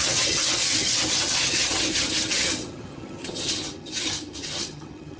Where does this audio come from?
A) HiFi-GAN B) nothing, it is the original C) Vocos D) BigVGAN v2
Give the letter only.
A